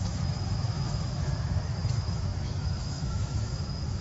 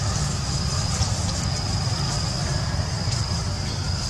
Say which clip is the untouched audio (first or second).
second